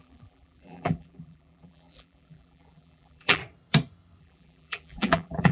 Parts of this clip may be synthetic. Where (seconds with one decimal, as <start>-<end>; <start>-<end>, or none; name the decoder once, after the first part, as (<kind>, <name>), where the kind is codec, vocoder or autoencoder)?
0.0-3.4 (vocoder, BigVGAN v2); 4.2-5.5